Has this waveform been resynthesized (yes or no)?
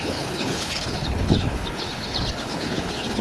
yes